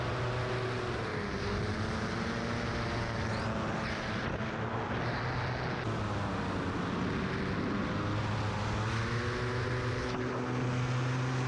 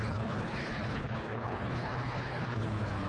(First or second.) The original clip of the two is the first